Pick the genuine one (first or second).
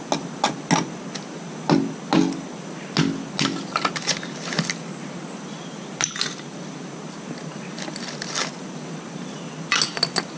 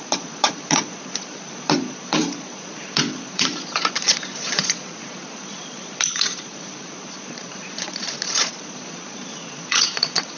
first